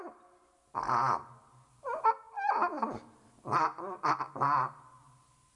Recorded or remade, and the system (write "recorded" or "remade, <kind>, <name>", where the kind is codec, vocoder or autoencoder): recorded